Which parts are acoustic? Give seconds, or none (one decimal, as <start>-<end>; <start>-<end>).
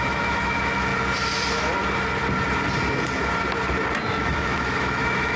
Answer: 0.9-4.1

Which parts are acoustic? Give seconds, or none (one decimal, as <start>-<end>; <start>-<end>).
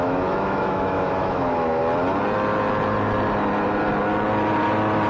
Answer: 1.8-5.1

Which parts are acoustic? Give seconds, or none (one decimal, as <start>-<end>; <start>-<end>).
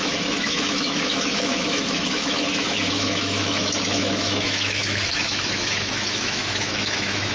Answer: none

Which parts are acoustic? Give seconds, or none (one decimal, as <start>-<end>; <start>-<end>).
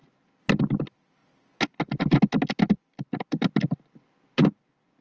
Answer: 0.0-5.0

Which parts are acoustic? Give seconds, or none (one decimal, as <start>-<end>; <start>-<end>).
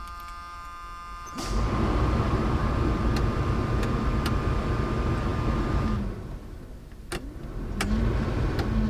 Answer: 0.0-8.9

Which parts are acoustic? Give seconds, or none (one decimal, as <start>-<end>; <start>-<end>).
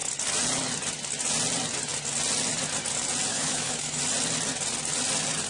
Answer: 0.0-3.3; 4.0-5.5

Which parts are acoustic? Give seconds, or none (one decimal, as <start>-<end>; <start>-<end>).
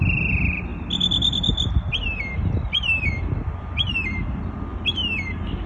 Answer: 0.0-5.7